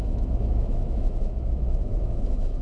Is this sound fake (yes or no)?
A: yes